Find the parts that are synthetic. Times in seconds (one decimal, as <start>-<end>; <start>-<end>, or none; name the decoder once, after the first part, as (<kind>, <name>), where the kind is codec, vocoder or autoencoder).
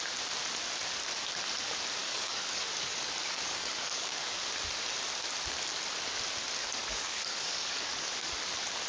2.0-4.5 (codec, DAC); 6.6-8.4